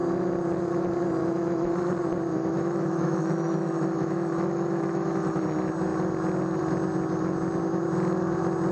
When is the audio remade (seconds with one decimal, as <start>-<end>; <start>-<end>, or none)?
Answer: 1.2-1.7; 2.3-5.4